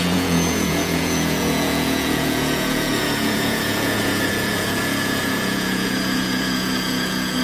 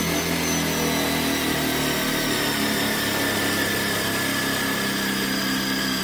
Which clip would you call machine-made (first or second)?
first